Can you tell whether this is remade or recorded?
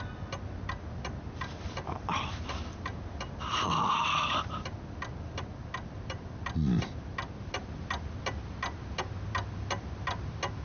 recorded